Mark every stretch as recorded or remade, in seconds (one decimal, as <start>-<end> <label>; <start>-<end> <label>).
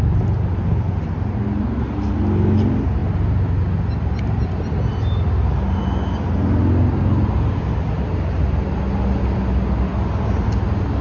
0.0-11.0 recorded